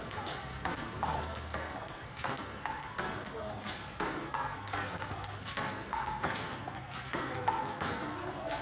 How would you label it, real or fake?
fake